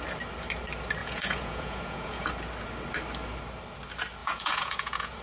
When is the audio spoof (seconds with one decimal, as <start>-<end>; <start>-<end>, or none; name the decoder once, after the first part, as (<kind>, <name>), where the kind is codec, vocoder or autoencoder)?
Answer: 1.0-2.3 (vocoder, Vocos); 4.2-5.2